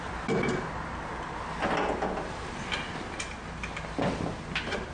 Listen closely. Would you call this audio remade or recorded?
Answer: recorded